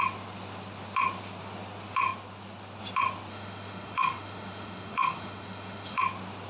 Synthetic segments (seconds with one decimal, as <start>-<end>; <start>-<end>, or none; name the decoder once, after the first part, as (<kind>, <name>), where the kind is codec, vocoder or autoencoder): 3.3-6.0 (autoencoder, DAC-VAE)